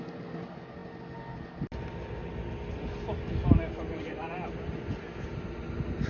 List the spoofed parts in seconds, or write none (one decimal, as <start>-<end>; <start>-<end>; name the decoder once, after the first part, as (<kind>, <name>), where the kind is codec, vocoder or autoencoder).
none